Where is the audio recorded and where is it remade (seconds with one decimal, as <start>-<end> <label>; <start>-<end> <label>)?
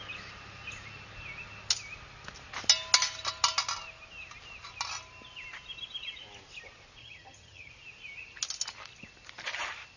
0.0-7.0 recorded; 7.0-7.7 remade; 7.7-10.0 recorded